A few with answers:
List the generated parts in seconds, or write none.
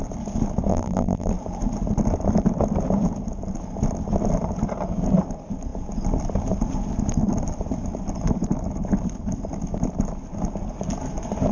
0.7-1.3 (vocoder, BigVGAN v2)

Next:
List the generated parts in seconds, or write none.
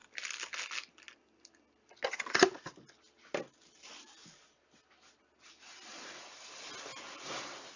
none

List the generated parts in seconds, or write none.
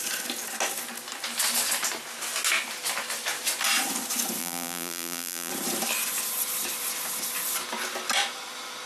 4.4-5.5 (vocoder, BigVGAN v2)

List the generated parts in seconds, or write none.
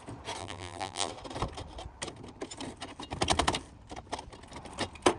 0.4-1.1 (vocoder, BigVGAN v2)